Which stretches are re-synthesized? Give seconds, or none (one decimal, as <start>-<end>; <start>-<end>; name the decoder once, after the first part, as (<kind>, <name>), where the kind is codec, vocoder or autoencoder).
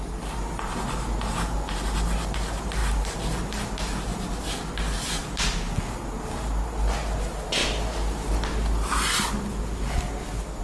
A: none